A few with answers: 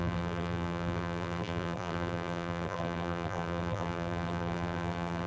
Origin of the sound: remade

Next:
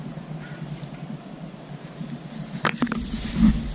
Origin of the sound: recorded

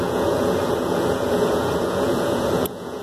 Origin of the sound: remade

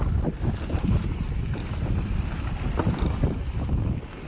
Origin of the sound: recorded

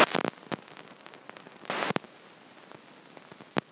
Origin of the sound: recorded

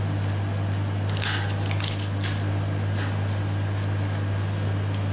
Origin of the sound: recorded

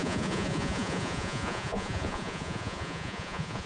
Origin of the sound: remade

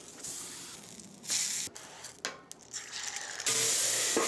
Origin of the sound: recorded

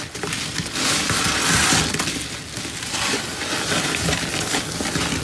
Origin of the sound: recorded